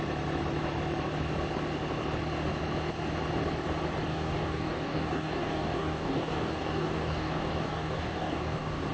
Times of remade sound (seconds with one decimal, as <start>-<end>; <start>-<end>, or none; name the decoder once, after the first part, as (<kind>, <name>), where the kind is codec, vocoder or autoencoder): 4.1-8.9 (codec, DAC)